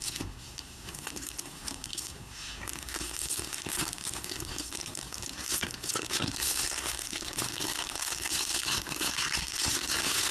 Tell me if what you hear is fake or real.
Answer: fake